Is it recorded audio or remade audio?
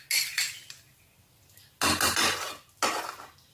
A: recorded